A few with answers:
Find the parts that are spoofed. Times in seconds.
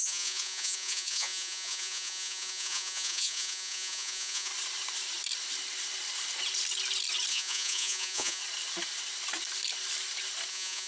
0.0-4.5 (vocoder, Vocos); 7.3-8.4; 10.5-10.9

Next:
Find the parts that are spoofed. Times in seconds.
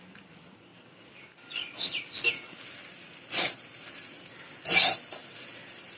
none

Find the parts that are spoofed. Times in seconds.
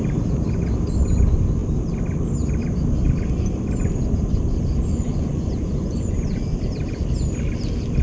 4.9-5.5 (vocoder, Vocos)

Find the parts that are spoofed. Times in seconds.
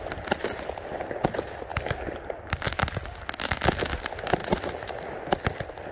4.4-5.1 (vocoder, Vocos)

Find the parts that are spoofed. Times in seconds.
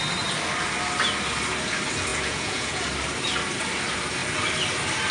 2.1-2.8 (vocoder, Vocos)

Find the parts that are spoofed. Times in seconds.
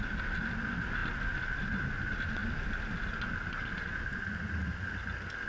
none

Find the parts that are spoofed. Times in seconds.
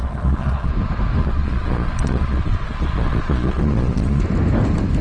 0.0-0.7 (vocoder, Vocos); 1.2-4.2